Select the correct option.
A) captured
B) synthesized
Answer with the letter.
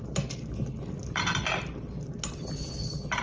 A